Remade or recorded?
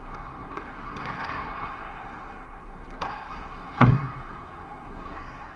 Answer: remade